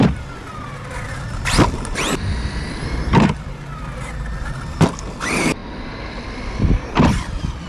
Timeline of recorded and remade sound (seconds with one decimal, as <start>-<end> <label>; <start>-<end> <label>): 0.0-0.5 remade; 0.5-5.1 recorded; 5.1-5.6 remade; 5.6-6.1 recorded; 6.1-7.7 remade